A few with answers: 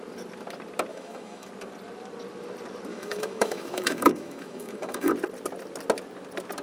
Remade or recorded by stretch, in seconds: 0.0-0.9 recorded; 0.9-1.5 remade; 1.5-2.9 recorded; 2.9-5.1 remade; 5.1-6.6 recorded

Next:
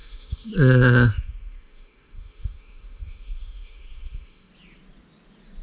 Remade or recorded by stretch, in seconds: 0.0-0.5 remade; 0.5-1.1 recorded; 1.1-4.5 remade; 4.5-5.6 recorded

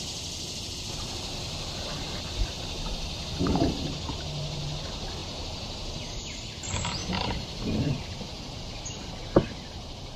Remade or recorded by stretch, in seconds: 0.0-10.2 recorded

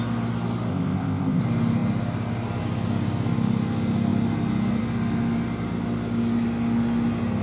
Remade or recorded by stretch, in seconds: 0.0-0.7 recorded; 0.7-1.4 remade; 1.4-7.4 recorded

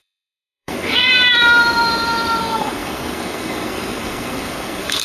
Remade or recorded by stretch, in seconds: 0.0-1.1 remade; 1.1-2.4 recorded; 2.4-5.0 remade

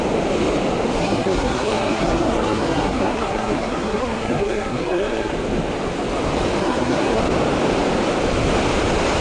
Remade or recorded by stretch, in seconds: 0.0-1.0 recorded; 1.0-5.3 remade; 5.3-6.6 recorded; 6.6-7.2 remade; 7.2-9.2 recorded

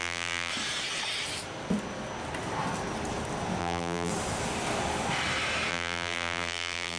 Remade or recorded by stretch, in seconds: 0.0-0.5 remade; 0.5-3.6 recorded; 3.6-4.1 remade; 4.1-5.7 recorded; 5.7-7.0 remade

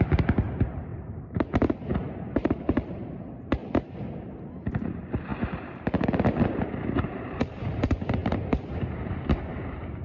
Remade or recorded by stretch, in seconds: 0.0-3.6 remade; 3.6-4.5 recorded; 4.5-10.0 remade